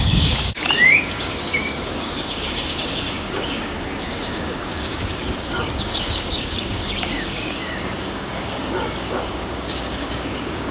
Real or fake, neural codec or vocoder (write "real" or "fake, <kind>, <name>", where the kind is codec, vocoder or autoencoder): fake, codec, DAC